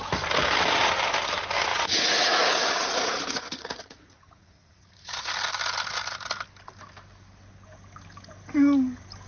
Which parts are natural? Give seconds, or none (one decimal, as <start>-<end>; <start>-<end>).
0.0-1.7; 5.3-9.3